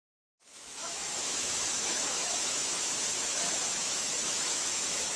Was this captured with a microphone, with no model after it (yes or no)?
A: no